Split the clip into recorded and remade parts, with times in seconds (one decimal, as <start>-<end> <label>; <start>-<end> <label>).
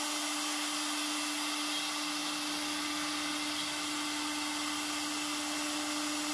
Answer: 0.0-6.3 recorded